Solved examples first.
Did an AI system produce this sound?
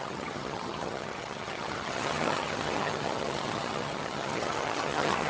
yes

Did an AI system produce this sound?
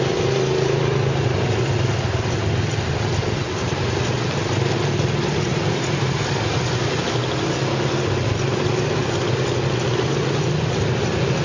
no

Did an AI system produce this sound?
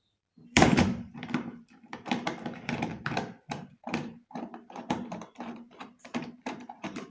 yes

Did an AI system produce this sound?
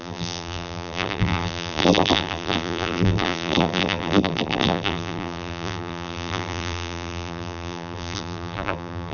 yes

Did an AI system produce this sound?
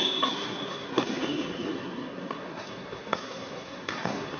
yes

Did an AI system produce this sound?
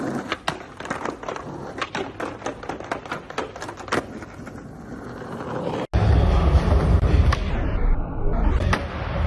no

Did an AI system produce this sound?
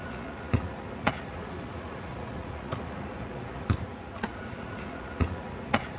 yes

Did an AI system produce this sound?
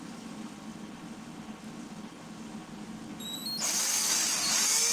no